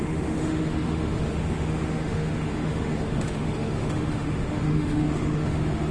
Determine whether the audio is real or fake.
fake